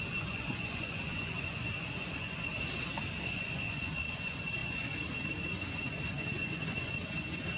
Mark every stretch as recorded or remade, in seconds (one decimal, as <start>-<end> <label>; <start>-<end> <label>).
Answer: 0.0-2.5 remade; 2.5-3.2 recorded; 3.2-7.6 remade

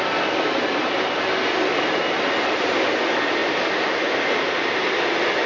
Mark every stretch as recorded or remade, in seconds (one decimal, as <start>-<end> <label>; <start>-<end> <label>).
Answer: 0.0-5.5 recorded

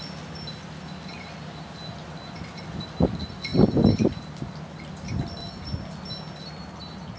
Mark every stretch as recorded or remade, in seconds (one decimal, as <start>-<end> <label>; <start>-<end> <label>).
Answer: 0.0-7.2 recorded